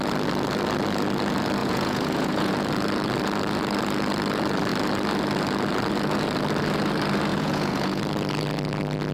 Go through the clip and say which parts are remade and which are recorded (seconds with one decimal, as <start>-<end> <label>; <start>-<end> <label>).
0.0-1.6 recorded; 1.6-2.5 remade; 2.5-7.3 recorded; 7.3-8.0 remade; 8.0-9.1 recorded